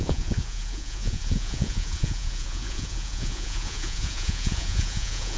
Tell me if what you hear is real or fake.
fake